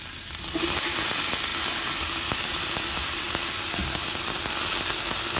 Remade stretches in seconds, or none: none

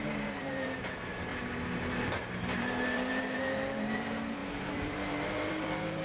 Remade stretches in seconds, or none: 0.0-1.3 (vocoder, BigVGAN v2); 2.0-6.0

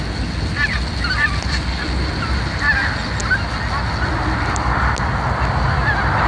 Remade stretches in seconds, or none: none

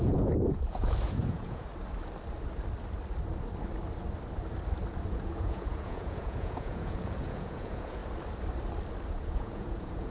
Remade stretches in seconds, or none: 0.0-1.7 (vocoder, Vocos); 5.1-8.0; 9.1-10.1

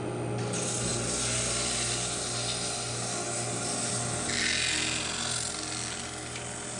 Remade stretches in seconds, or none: none

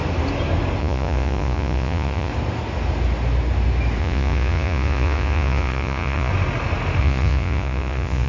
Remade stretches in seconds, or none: 0.8-2.3 (vocoder, Vocos); 4.0-6.3; 7.0-8.3

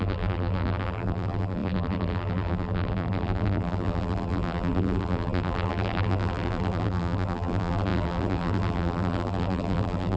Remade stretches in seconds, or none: 0.0-10.2 (vocoder, BigVGAN v2)

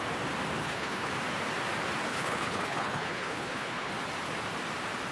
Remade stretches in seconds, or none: 0.6-1.1 (codec, HILCodec); 2.1-3.9